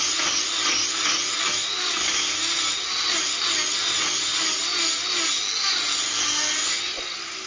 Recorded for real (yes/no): yes